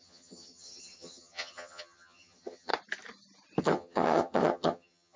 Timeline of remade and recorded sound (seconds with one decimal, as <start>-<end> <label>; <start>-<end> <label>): 0.0-2.7 remade; 2.7-3.6 recorded; 3.6-5.2 remade

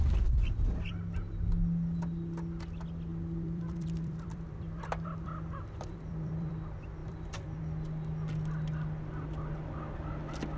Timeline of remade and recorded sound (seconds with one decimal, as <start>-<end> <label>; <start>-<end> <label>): 0.0-3.1 recorded; 3.1-6.5 remade; 6.5-7.0 recorded; 7.0-7.6 remade; 7.6-10.6 recorded

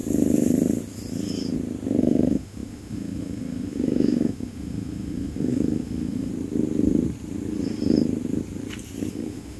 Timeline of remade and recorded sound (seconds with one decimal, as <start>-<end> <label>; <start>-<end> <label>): 0.0-2.0 recorded; 2.0-6.3 remade; 6.3-9.1 recorded; 9.1-9.6 remade

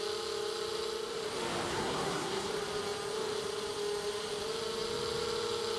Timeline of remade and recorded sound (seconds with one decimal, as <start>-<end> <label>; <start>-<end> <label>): 0.0-1.7 recorded; 1.7-2.5 remade; 2.5-5.8 recorded

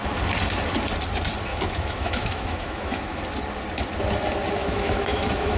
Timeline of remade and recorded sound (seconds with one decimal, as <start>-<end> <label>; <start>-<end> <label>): 0.0-1.5 recorded; 1.5-3.2 remade; 3.2-4.6 recorded; 4.6-5.6 remade

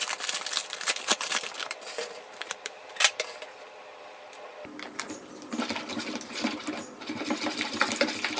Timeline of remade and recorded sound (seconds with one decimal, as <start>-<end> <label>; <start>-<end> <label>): 0.0-0.6 recorded; 0.6-3.4 remade; 3.4-8.4 recorded

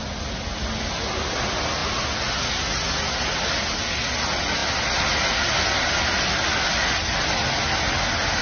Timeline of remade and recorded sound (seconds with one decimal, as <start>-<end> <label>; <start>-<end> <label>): 0.0-8.4 recorded

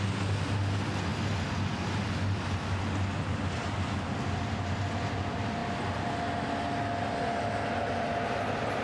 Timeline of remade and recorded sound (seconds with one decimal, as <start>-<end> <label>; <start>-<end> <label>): 0.0-8.8 recorded